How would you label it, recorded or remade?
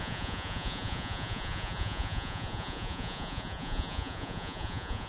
remade